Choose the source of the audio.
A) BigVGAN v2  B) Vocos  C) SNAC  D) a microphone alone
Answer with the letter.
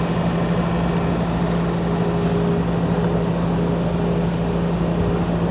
D